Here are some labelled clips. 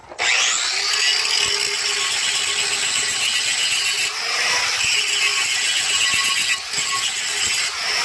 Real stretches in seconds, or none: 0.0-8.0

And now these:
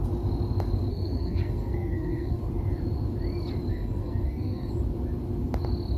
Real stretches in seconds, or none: 0.0-0.9; 2.4-3.7; 4.7-6.0

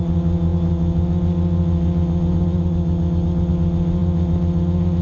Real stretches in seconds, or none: 0.0-5.0

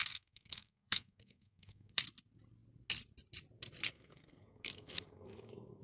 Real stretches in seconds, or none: 2.0-3.9

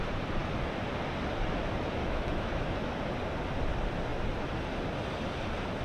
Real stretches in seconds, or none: 0.0-2.0; 3.0-5.8

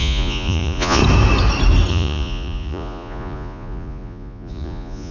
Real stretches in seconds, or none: 1.0-1.9

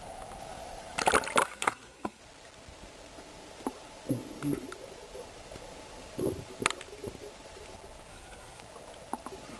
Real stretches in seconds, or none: 0.0-1.4; 2.2-8.1; 8.6-9.6